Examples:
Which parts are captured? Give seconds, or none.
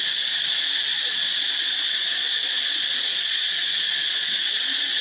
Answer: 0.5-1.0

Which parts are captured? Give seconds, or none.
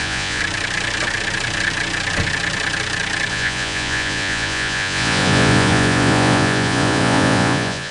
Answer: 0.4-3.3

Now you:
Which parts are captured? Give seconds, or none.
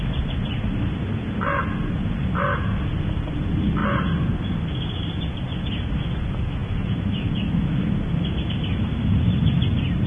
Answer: 0.0-10.1